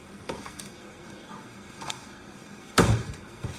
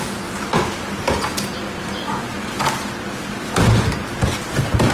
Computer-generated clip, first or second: first